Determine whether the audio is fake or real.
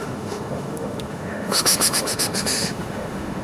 fake